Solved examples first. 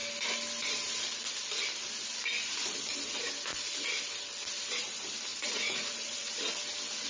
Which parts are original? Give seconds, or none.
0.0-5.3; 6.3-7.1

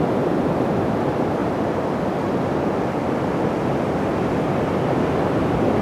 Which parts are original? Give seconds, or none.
0.0-5.8

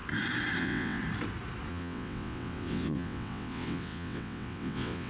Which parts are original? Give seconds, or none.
0.0-0.6; 1.0-1.7